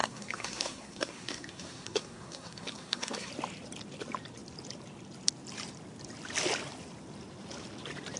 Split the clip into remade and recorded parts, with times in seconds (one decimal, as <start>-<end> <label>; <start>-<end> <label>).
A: 0.0-3.3 remade; 3.3-8.2 recorded